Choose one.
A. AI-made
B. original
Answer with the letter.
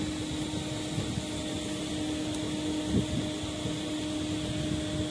B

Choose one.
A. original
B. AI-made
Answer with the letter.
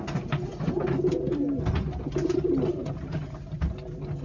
A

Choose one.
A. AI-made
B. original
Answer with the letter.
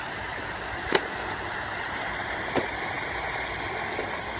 B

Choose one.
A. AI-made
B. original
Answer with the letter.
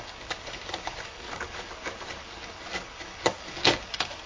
A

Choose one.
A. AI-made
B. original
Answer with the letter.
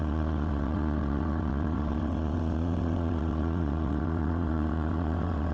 A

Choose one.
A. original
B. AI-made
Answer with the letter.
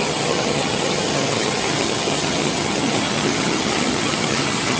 B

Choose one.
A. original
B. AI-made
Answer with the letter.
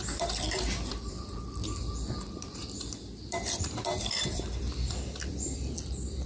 B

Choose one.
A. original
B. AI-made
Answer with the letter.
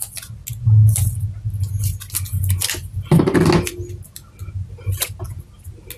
A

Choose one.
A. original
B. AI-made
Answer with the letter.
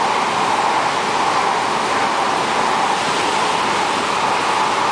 A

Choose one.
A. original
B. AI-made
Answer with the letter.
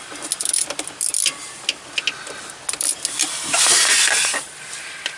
A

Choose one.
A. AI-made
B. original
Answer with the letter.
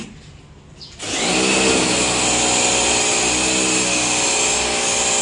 B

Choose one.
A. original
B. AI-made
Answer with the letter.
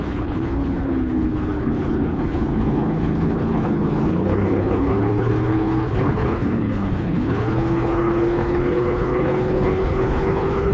B